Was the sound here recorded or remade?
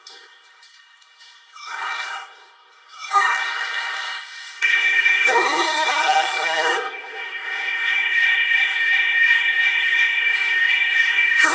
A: remade